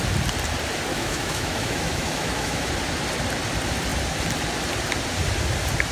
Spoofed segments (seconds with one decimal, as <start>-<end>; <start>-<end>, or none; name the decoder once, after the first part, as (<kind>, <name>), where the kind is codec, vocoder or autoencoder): 0.9-2.7 (autoencoder, DAC-VAE)